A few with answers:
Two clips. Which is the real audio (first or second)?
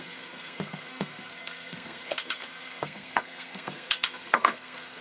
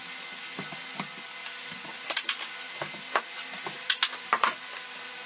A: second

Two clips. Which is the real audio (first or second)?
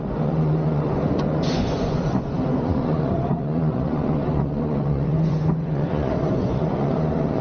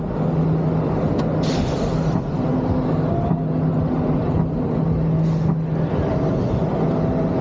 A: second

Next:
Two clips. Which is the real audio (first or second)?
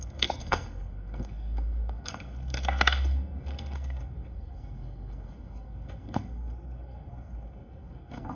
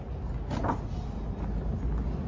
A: second